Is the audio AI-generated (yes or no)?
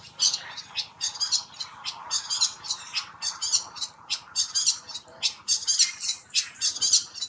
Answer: no